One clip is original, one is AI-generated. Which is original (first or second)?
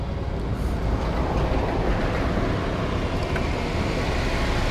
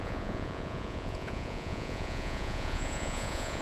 first